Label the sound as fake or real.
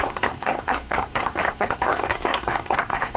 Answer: fake